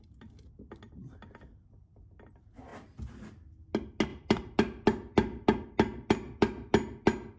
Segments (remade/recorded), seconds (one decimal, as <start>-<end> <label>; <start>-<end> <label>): 0.0-7.4 recorded